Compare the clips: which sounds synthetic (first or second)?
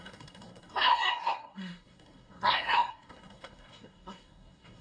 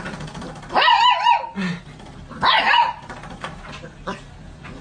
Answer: first